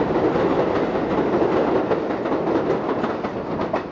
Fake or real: real